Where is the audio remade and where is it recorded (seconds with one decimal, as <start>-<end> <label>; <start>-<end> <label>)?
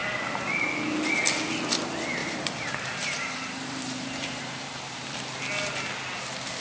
0.0-2.2 recorded; 2.2-5.2 remade; 5.2-6.6 recorded